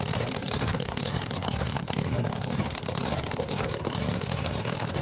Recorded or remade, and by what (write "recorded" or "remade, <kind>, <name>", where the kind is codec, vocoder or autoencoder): remade, codec, SNAC